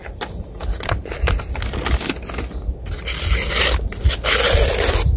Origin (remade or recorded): recorded